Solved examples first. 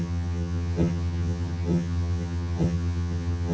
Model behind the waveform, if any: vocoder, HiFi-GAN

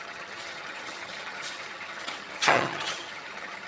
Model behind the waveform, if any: vocoder, HiFi-GAN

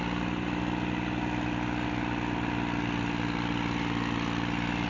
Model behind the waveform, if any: none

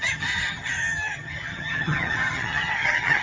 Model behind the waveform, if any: vocoder, HiFi-GAN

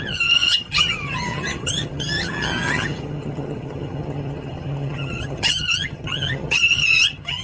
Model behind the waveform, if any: vocoder, HiFi-GAN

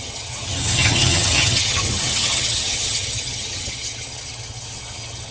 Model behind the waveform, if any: vocoder, HiFi-GAN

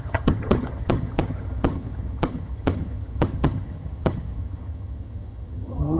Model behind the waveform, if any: vocoder, HiFi-GAN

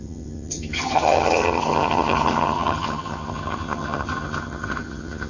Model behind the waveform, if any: vocoder, HiFi-GAN